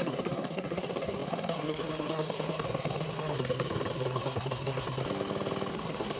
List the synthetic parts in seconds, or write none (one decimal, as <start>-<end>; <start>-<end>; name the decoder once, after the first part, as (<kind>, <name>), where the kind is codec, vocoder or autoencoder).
0.0-5.0 (codec, SNAC); 5.7-6.2